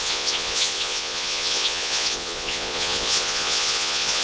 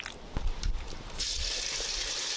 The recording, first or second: second